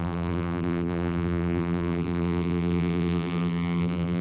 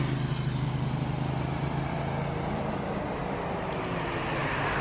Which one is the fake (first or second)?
first